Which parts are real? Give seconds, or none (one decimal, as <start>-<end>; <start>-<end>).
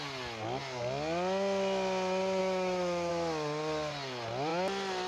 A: 0.0-2.4; 3.1-5.1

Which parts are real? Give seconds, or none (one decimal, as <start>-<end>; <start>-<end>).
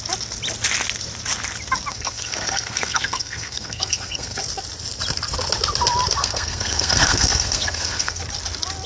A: 0.0-1.9; 4.4-6.2; 8.2-8.9